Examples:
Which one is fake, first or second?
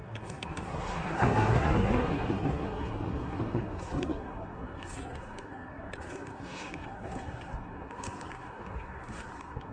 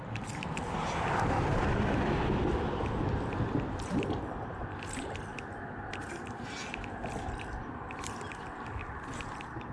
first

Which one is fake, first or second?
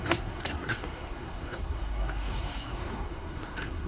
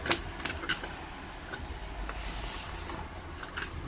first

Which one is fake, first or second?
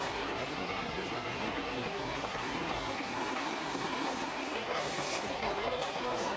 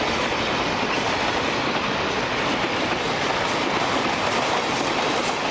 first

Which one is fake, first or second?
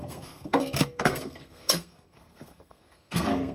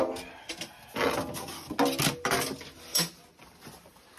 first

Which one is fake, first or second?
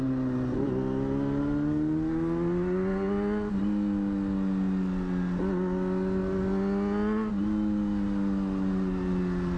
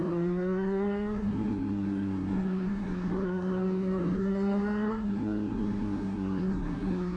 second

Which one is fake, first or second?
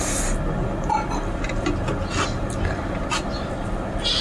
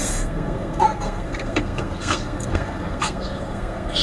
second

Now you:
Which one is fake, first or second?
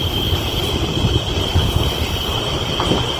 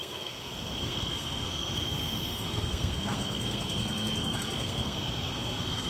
second